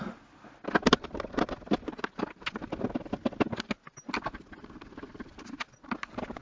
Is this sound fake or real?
real